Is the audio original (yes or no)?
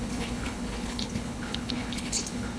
no